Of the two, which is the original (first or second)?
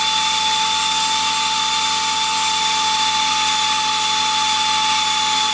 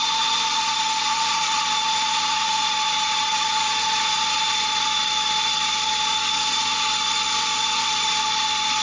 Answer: first